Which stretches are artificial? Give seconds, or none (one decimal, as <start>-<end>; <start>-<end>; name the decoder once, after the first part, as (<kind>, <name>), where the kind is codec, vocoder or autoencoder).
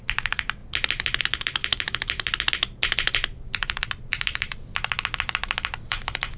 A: 0.0-0.6 (vocoder, BigVGAN v2); 1.2-1.6; 3.4-4.7; 5.9-6.4